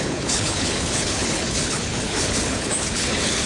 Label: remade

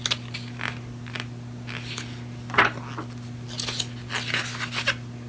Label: recorded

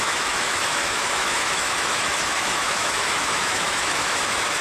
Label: remade